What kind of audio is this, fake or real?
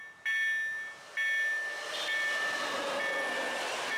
real